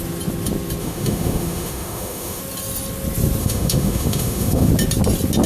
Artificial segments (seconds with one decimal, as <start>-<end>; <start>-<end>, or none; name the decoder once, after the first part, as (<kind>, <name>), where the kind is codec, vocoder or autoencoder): 0.8-2.4 (autoencoder, DAC-VAE); 3.4-4.7